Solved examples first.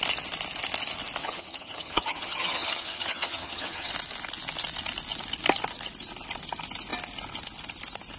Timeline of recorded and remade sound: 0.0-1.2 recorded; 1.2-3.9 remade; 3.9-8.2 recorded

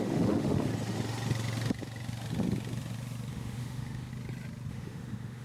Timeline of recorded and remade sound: 0.0-0.7 remade; 0.7-3.3 recorded; 3.3-4.1 remade; 4.1-4.7 recorded; 4.7-5.4 remade

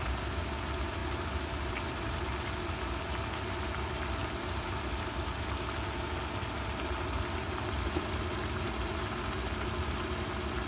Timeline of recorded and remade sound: 0.0-10.7 recorded